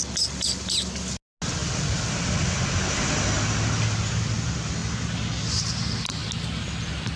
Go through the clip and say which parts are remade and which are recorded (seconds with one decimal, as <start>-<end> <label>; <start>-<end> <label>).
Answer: 0.0-7.2 recorded